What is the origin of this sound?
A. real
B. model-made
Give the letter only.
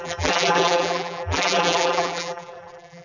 B